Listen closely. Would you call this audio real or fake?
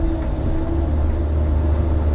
real